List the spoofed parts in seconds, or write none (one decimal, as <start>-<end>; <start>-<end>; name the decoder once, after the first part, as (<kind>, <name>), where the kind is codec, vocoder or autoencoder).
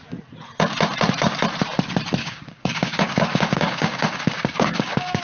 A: 2.2-5.2 (codec, DAC)